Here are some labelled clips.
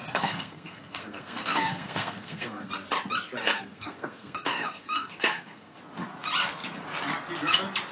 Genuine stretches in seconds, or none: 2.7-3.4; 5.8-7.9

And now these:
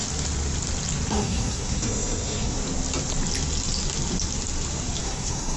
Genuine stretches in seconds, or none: 0.0-1.1; 2.6-5.0

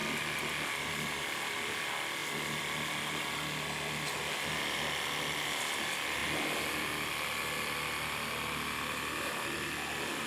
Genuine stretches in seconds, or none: 0.0-10.3

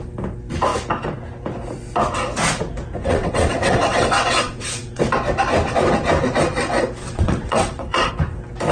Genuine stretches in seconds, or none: 0.0-3.0; 5.0-7.0; 8.1-8.7

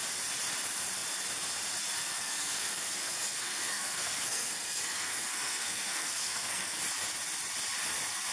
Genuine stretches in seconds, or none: 0.0-2.0; 6.8-8.3

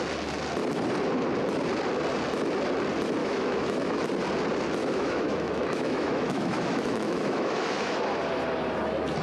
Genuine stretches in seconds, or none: 0.0-3.2; 4.1-4.8; 8.0-9.2

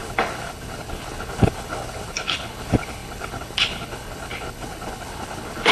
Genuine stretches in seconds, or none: none

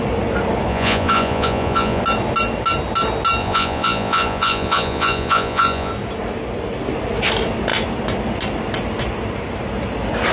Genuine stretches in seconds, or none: 0.0-0.7; 2.0-3.4; 5.9-10.3